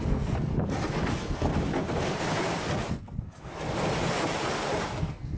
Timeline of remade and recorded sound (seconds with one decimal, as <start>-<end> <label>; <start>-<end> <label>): 0.0-0.5 remade; 0.5-1.1 recorded; 1.1-1.5 remade; 1.5-2.9 recorded; 2.9-3.5 remade; 3.5-5.0 recorded; 5.0-5.4 remade